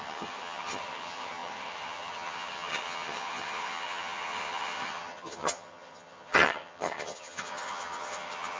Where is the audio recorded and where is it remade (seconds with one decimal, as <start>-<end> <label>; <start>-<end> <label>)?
0.0-8.6 remade